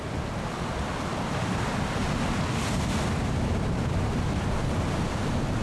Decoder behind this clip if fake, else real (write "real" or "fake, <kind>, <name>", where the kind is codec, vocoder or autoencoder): real